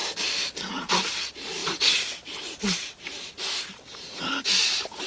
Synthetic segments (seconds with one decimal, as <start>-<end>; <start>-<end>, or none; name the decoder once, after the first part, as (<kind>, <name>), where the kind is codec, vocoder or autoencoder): 0.9-5.1 (vocoder, BigVGAN v2)